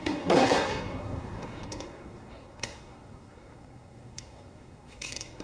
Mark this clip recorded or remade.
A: remade